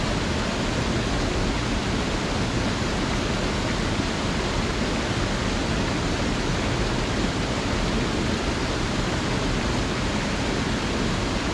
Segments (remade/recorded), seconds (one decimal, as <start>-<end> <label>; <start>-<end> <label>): 0.0-11.5 recorded